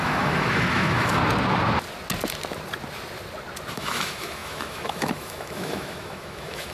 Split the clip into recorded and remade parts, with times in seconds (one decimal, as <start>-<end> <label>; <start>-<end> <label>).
0.0-1.2 remade; 1.2-3.7 recorded; 3.7-6.7 remade